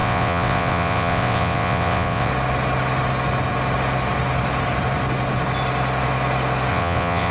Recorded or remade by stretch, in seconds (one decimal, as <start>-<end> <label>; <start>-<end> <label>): 0.0-2.3 remade; 2.3-6.7 recorded; 6.7-7.3 remade